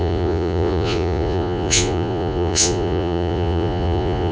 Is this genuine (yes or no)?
no